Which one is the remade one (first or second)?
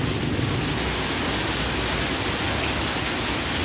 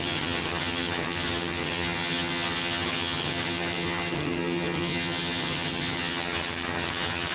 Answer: second